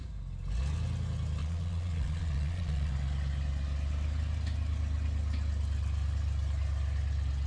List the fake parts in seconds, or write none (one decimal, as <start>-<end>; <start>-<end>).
1.4-2.9